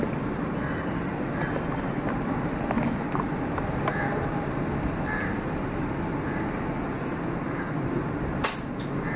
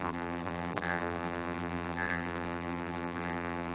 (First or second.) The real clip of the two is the first